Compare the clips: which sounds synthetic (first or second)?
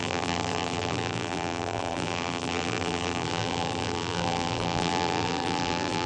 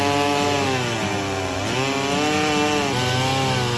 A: first